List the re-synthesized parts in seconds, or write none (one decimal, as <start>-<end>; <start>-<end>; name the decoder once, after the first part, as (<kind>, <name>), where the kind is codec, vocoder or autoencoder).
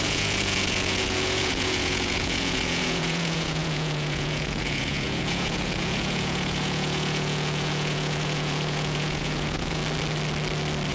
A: 0.0-9.8 (vocoder, Vocos)